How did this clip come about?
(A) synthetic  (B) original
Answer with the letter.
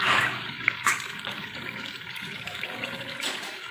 A